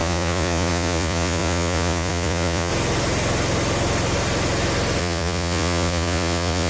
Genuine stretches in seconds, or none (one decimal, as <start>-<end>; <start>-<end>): 2.7-5.0